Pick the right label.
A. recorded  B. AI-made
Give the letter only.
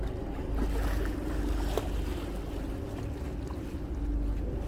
A